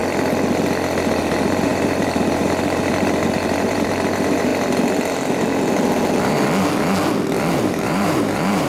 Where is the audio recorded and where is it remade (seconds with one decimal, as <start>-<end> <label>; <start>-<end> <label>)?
0.0-1.2 recorded; 1.2-4.5 remade; 4.5-7.6 recorded; 7.6-8.7 remade